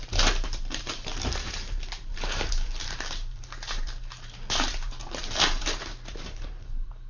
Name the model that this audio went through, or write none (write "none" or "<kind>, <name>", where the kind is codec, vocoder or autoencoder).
vocoder, BigVGAN v2